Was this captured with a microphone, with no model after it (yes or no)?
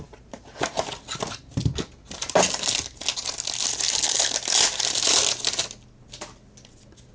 yes